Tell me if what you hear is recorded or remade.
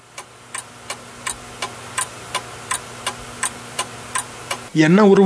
recorded